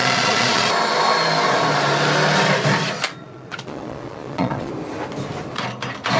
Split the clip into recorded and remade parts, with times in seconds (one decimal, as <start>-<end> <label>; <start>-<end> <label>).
0.0-0.7 remade; 0.7-3.2 recorded; 3.2-4.7 remade; 4.7-6.2 recorded